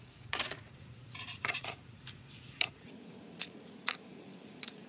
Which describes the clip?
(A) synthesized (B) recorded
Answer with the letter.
A